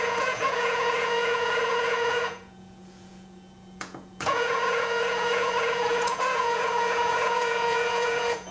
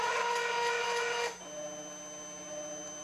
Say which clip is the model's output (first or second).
first